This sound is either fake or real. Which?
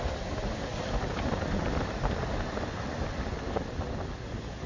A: real